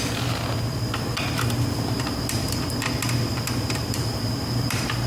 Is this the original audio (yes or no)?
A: no